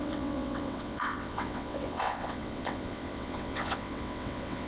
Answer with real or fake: fake